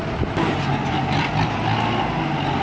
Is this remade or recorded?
recorded